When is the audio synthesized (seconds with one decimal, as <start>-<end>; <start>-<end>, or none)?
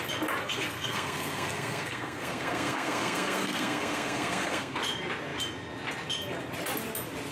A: 0.4-4.8